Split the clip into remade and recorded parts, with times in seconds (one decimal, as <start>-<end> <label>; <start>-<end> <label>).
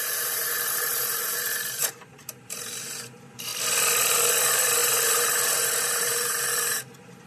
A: 0.0-3.5 remade; 3.5-4.3 recorded; 4.3-7.3 remade